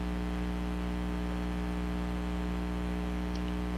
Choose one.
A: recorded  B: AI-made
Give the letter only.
A